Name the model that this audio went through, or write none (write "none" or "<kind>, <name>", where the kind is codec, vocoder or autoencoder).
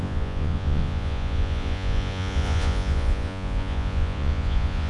vocoder, Vocos